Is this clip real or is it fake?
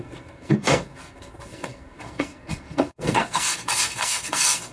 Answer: fake